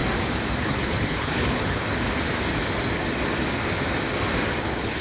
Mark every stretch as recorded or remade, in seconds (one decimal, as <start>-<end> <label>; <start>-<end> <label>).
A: 0.0-0.6 recorded; 0.6-1.8 remade; 1.8-4.6 recorded; 4.6-5.0 remade